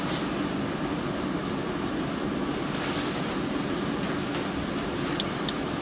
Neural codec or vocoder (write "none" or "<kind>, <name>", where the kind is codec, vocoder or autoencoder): none